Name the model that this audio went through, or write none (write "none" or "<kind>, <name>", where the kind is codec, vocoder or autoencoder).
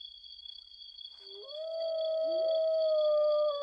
autoencoder, DAC-VAE